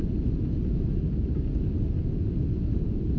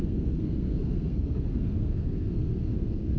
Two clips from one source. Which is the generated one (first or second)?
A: second